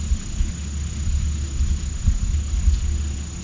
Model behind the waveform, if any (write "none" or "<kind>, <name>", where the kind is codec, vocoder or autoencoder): none